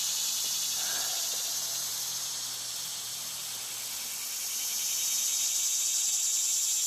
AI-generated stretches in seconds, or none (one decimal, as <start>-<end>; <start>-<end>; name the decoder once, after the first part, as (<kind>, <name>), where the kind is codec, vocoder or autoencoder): none